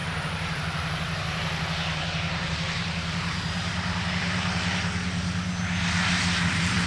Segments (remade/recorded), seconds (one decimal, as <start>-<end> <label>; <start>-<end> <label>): 0.0-6.9 remade